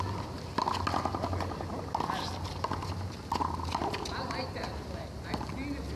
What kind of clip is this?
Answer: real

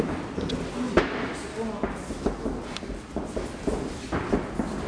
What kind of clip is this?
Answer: real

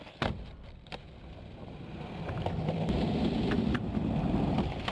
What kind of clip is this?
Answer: fake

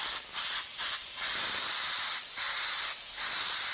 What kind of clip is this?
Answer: real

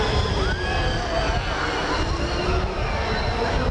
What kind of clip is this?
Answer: real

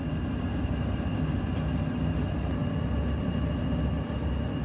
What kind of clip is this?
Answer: real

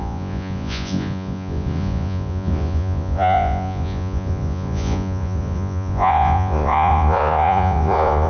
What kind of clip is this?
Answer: fake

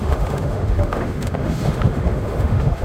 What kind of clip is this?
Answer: fake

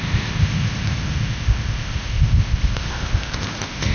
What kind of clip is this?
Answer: fake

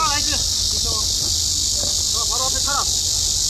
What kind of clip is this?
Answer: real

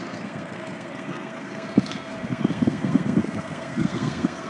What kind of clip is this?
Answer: fake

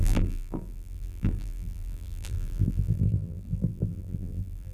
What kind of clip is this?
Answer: fake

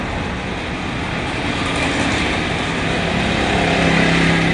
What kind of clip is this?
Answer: real